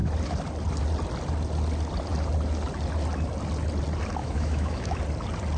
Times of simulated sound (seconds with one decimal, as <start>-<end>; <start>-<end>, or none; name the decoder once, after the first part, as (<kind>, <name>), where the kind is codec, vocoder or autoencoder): 4.2-5.0 (autoencoder, DAC-VAE)